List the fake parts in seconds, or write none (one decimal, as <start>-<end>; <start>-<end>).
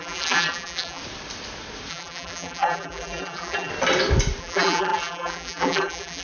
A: 0.0-1.0; 1.9-3.7; 4.4-6.2